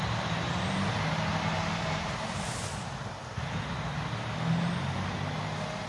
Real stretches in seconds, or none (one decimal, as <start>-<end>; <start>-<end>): 0.0-1.5; 4.3-5.9